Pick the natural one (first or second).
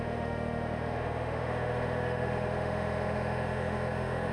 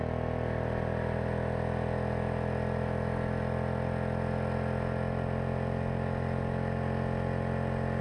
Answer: second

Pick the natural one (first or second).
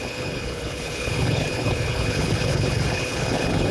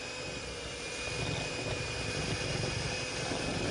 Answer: second